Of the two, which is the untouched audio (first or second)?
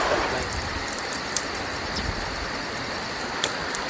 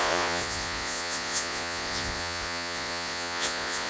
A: first